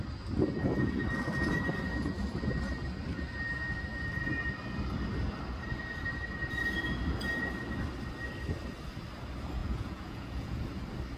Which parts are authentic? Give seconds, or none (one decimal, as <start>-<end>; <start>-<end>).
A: 0.0-9.6; 10.6-11.2